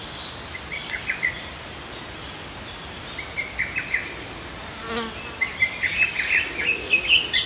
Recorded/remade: recorded